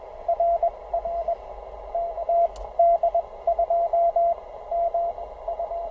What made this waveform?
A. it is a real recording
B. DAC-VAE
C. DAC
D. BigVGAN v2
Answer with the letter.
A